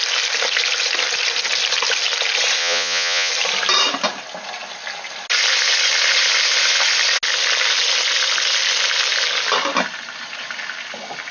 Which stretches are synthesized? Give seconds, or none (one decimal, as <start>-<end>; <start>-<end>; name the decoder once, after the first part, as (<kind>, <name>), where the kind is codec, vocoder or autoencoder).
2.6-3.3 (vocoder, Vocos)